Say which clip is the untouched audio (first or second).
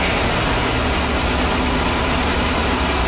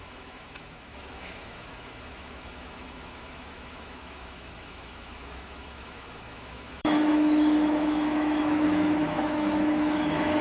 first